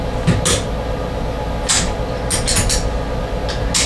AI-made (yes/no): no